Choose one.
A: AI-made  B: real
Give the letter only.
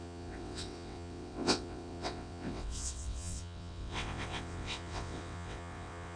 A